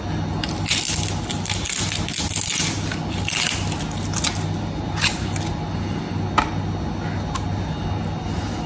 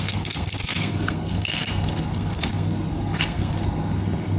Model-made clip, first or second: second